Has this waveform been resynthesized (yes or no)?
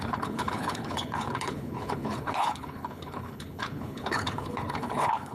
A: yes